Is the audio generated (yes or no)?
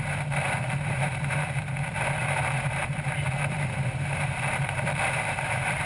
yes